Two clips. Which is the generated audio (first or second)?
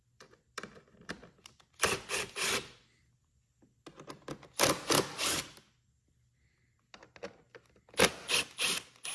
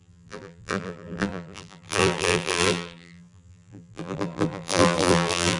second